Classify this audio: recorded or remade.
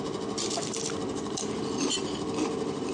recorded